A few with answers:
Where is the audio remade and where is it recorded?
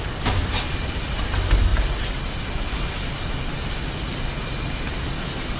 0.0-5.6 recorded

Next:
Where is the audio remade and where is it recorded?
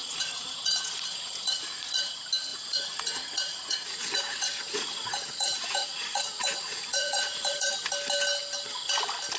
0.0-2.1 remade; 2.1-2.5 recorded; 2.5-7.7 remade; 7.7-9.4 recorded